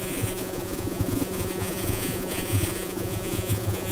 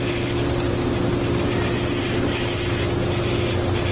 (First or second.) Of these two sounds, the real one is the second